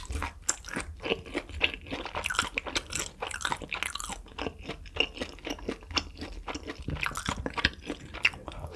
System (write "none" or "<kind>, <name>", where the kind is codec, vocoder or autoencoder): none